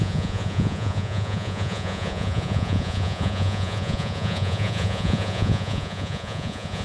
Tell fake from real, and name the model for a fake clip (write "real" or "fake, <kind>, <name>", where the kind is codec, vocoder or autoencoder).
fake, vocoder, Vocos